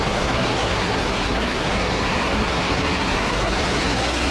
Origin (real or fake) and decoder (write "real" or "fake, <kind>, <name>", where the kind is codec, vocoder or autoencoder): fake, codec, SNAC